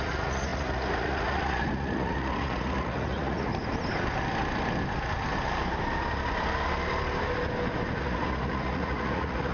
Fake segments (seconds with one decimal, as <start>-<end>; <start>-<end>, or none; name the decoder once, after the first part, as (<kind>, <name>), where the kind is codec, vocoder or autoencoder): 0.0-3.5 (vocoder, Vocos); 8.0-9.5